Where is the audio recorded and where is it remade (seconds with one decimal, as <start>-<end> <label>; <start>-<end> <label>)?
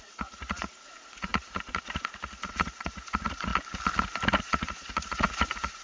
0.0-3.5 remade; 3.5-4.4 recorded; 4.4-5.8 remade